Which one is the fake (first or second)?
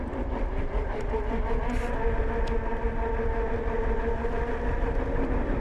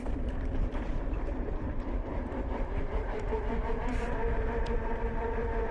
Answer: second